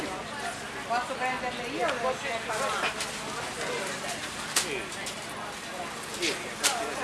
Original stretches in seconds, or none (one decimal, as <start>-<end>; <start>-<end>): 0.0-7.0